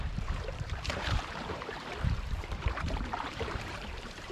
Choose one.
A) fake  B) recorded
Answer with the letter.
A